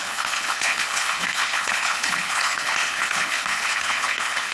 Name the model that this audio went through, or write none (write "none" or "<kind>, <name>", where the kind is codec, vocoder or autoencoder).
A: codec, HILCodec